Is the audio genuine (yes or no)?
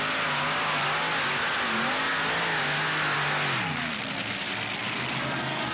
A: yes